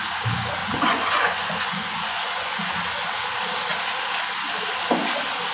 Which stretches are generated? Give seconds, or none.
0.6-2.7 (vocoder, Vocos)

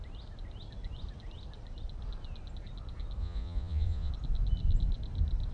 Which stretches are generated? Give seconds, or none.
3.2-4.1 (vocoder, Vocos)

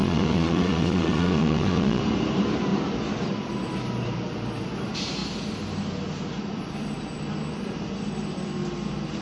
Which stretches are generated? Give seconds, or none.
0.0-2.0 (vocoder, Vocos)

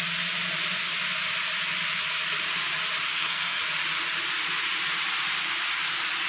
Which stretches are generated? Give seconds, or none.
3.1-3.6 (codec, SNAC)

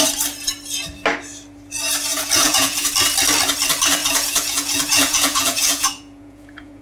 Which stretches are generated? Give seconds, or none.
2.1-2.9 (vocoder, Vocos); 4.0-6.8

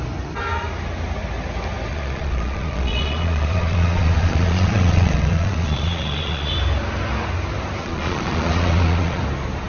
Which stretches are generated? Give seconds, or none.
1.9-6.5 (vocoder, Vocos); 7.8-9.2